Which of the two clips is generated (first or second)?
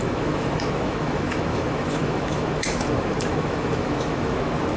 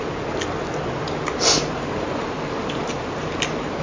first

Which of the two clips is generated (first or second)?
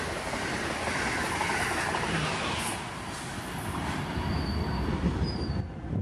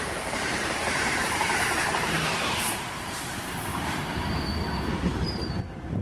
second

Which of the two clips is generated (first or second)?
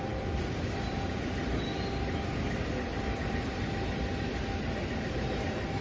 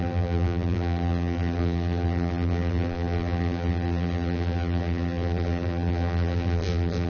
second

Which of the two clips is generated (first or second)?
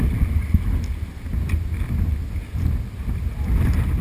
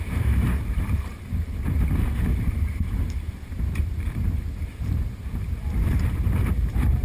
second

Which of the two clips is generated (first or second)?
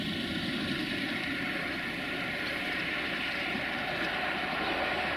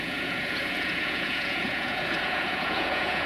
second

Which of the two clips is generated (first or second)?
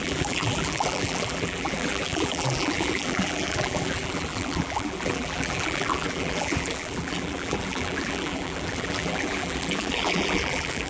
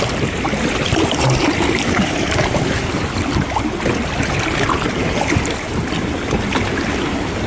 first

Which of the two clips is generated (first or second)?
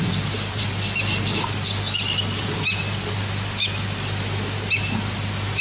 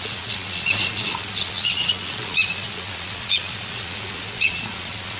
second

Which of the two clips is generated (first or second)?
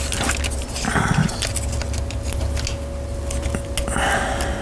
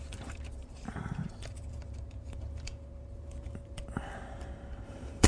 second